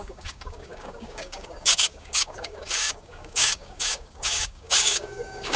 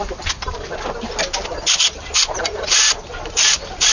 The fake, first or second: first